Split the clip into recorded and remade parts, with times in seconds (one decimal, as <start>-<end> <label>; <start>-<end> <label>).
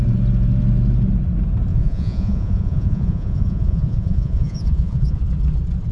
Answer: 0.0-1.7 recorded; 1.7-5.2 remade; 5.2-5.9 recorded